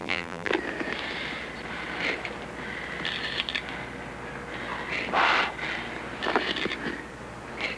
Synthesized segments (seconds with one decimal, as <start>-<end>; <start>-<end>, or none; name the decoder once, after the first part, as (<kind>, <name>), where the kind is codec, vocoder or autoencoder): 0.0-0.5 (vocoder, BigVGAN v2)